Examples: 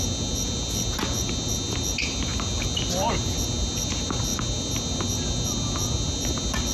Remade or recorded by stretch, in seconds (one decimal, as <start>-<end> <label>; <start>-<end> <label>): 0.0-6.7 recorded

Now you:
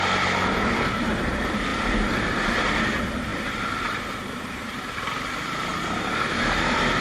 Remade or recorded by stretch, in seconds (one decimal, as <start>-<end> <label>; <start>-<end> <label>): 0.0-7.0 remade

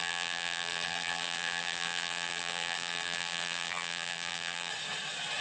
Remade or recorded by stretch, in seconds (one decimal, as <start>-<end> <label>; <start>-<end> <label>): 0.0-4.7 remade; 4.7-5.4 recorded

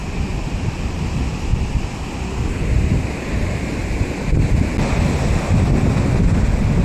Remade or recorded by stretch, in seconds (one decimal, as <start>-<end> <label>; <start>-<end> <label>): 0.0-1.5 remade; 1.5-2.2 recorded; 2.2-3.8 remade; 3.8-6.8 recorded

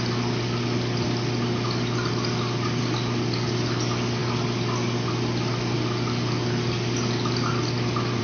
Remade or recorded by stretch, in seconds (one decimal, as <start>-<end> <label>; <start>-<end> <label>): 0.0-8.2 recorded